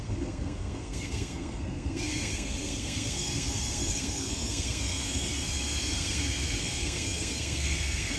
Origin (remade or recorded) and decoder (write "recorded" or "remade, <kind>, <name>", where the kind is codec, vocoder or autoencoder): remade, codec, SNAC